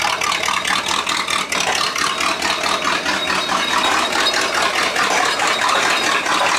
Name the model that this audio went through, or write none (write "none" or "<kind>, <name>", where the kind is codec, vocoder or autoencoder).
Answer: none